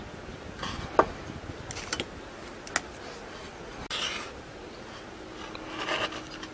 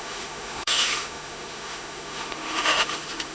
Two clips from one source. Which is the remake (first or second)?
second